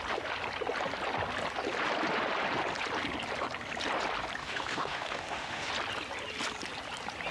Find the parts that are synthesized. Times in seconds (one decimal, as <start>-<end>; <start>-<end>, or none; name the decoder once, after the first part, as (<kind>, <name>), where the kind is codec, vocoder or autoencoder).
4.4-5.7 (autoencoder, DAC-VAE)

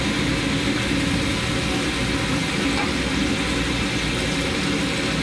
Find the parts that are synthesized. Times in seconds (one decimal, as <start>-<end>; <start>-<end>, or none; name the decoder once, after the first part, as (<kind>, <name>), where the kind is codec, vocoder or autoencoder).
2.4-3.0 (vocoder, BigVGAN v2)

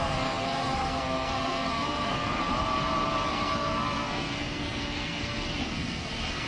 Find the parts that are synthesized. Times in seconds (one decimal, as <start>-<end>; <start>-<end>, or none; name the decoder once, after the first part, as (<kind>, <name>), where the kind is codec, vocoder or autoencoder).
0.0-2.5 (codec, SNAC); 3.3-6.5

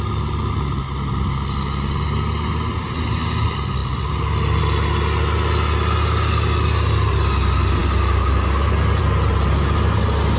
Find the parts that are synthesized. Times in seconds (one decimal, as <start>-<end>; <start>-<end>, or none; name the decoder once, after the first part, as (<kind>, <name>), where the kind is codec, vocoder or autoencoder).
none

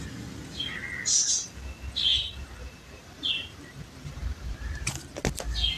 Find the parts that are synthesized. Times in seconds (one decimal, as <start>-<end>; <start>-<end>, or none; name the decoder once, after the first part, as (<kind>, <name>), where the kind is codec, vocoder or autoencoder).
2.1-4.9 (vocoder, BigVGAN v2)

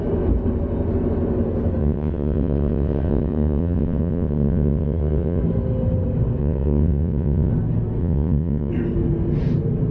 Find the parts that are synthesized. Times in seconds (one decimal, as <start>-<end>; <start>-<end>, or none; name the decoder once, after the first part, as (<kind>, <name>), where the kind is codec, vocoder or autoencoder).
1.8-5.4 (vocoder, WaveNeXt); 6.4-7.5; 8.0-8.7

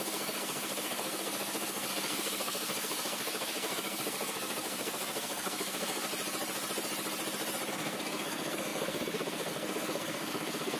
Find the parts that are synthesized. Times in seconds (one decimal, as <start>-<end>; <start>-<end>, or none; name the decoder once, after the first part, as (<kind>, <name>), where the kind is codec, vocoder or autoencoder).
0.0-6.1 (codec, SNAC); 7.7-10.8

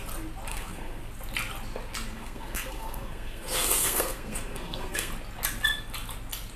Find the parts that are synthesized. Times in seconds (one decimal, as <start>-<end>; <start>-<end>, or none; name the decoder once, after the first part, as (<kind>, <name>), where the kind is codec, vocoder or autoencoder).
0.5-1.0 (codec, SNAC); 2.1-5.1